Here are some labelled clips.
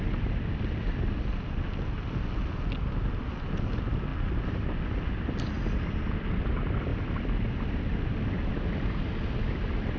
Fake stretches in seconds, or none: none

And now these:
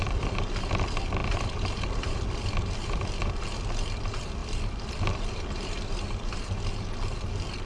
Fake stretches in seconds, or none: 1.2-3.0; 4.4-6.4

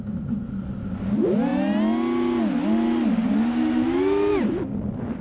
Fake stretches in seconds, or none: none

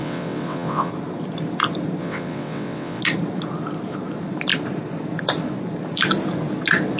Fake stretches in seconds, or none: 0.0-0.9; 2.0-3.0

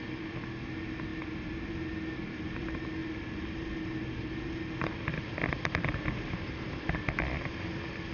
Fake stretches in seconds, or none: none

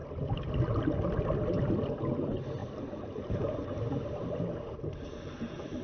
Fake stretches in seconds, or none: 0.0-0.5; 2.6-5.8

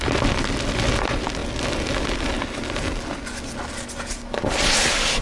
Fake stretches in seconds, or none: none